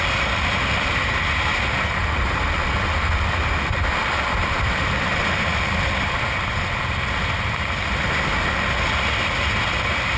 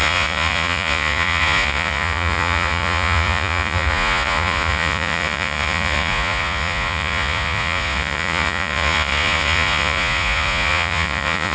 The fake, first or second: second